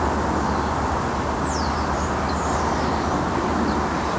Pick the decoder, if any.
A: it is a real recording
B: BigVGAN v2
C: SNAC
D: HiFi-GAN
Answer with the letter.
A